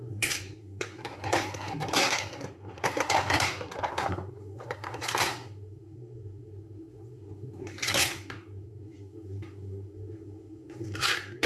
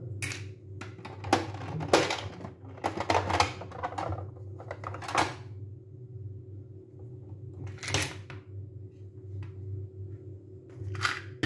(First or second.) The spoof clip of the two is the first